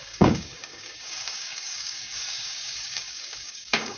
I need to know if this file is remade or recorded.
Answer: remade